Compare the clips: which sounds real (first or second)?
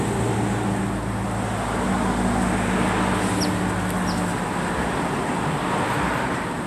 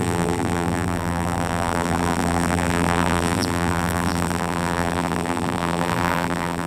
first